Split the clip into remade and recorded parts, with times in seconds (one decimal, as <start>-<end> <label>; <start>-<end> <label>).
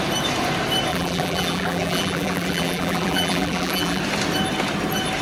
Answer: 0.0-0.9 recorded; 0.9-4.0 remade; 4.0-5.2 recorded